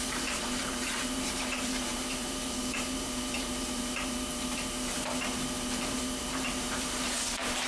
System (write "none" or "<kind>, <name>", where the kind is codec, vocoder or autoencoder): vocoder, BigVGAN v2